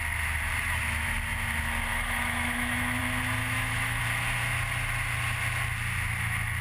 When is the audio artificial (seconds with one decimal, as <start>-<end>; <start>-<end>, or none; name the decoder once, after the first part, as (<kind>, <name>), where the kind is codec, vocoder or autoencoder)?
1.9-3.0 (autoencoder, DAC-VAE); 3.4-4.0